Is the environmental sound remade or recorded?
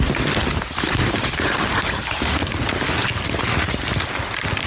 recorded